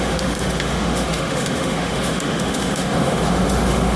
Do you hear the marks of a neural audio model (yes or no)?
yes